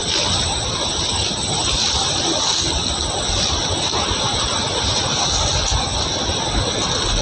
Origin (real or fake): real